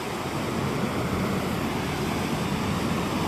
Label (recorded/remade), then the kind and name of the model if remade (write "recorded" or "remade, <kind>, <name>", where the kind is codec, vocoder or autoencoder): recorded